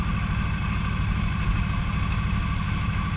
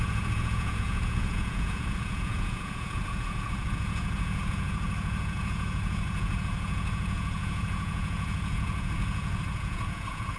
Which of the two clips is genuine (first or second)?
first